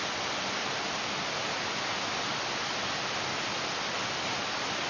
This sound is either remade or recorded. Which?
recorded